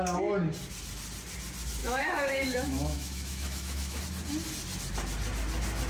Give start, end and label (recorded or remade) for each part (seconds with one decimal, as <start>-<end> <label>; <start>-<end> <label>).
0.0-1.8 recorded; 1.8-4.0 remade; 4.0-5.9 recorded

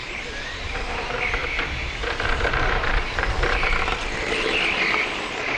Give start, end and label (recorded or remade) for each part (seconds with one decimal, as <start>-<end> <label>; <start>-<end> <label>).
0.0-0.9 remade; 0.9-1.4 recorded; 1.4-3.7 remade; 3.7-5.6 recorded